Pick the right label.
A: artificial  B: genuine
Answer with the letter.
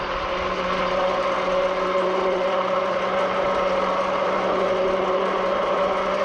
B